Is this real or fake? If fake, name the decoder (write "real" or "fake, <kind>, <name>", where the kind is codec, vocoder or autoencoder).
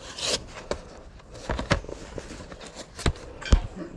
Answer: real